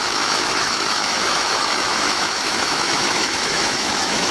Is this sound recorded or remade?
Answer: remade